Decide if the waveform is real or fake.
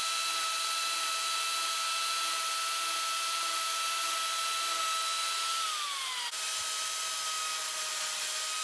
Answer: real